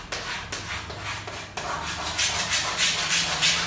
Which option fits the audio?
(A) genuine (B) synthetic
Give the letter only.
A